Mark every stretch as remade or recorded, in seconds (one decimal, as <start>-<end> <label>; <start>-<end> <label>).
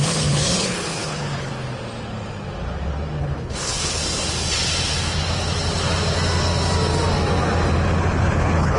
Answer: 0.0-1.5 remade; 1.5-3.2 recorded; 3.2-4.0 remade; 4.0-8.0 recorded; 8.0-8.8 remade